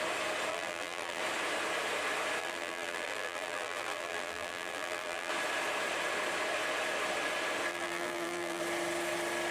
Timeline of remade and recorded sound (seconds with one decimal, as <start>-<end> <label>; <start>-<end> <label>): 0.0-0.5 recorded; 0.5-1.2 remade; 1.2-2.4 recorded; 2.4-5.3 remade; 5.3-7.7 recorded; 7.7-8.6 remade; 8.6-9.5 recorded